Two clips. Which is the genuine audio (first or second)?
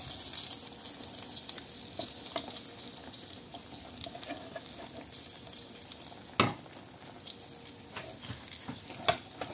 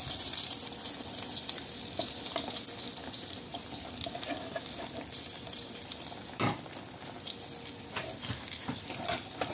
first